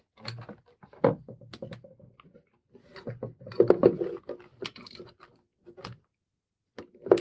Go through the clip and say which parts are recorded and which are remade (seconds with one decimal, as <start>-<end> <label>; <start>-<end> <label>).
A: 0.0-7.2 recorded